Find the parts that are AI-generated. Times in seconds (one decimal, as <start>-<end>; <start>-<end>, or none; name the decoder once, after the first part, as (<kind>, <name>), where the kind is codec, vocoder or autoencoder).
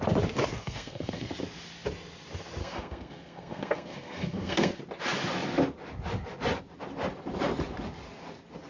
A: 0.6-1.3 (codec, SNAC); 2.6-4.8